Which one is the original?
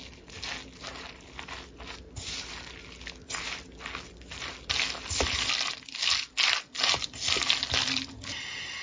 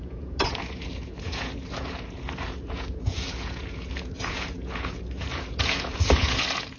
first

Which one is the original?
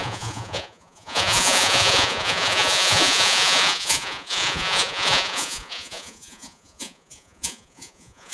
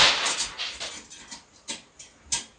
second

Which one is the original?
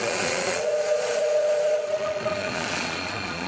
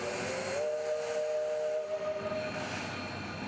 second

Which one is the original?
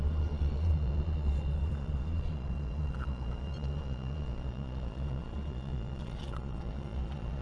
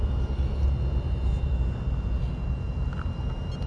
second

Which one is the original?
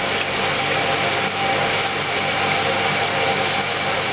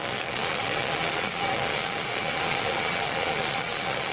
first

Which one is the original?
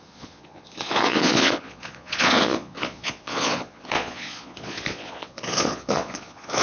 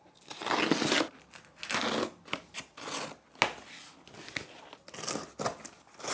second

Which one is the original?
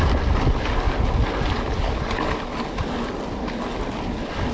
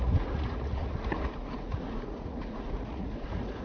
first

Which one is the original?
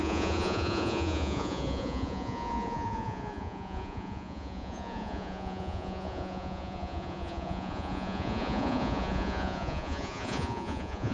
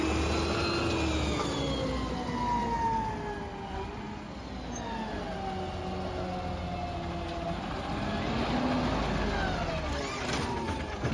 second